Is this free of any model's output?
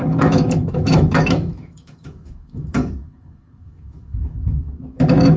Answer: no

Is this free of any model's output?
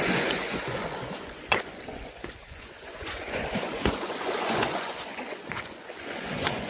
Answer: no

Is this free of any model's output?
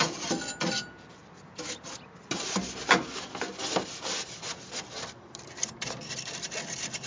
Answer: yes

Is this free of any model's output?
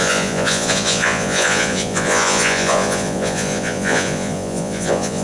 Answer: no